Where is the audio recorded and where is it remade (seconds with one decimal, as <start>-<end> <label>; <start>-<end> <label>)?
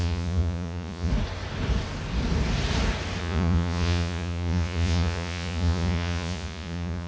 0.0-1.1 remade; 1.1-3.2 recorded; 3.2-7.1 remade